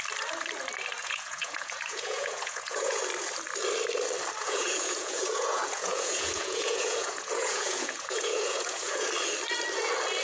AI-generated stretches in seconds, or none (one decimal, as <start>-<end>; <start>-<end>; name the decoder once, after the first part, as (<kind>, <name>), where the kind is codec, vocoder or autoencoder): 1.0-3.0 (vocoder, Vocos); 4.4-9.1